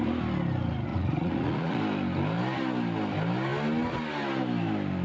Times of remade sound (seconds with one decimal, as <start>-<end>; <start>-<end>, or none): 0.9-1.8